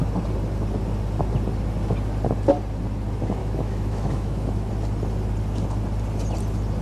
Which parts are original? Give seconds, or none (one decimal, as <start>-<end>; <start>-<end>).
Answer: 0.0-3.4; 4.7-6.8